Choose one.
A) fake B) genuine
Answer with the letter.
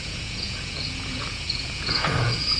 A